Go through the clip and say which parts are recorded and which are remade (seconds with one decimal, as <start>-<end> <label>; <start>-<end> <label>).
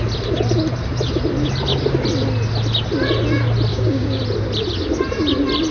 0.0-3.7 recorded; 3.7-4.2 remade; 4.2-5.7 recorded